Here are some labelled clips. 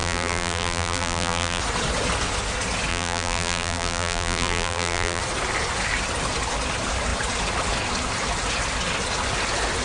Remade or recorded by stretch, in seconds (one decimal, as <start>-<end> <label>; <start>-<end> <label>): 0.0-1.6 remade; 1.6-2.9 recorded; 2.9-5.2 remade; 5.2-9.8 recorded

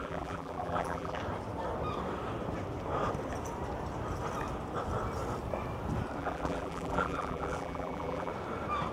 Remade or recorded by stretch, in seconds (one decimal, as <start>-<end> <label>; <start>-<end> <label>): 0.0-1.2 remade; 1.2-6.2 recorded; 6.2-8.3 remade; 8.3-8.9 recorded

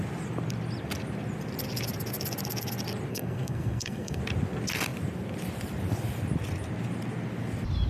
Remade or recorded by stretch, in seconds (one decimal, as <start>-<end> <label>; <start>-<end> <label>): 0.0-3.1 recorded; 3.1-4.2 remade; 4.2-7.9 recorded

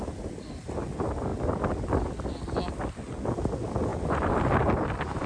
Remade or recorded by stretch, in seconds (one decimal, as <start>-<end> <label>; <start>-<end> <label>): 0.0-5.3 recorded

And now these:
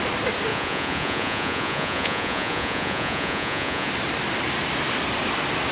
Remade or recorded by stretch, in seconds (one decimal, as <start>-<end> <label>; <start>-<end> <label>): 0.0-0.5 recorded; 0.5-3.9 remade; 3.9-5.7 recorded

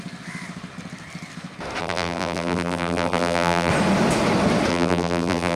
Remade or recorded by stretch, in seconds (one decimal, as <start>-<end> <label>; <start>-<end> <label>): 0.0-1.8 recorded; 1.8-3.7 remade; 3.7-4.7 recorded; 4.7-5.6 remade

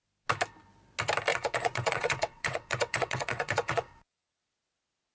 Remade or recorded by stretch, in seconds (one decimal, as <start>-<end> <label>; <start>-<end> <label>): 0.0-1.3 recorded; 1.3-4.4 remade; 4.4-5.1 recorded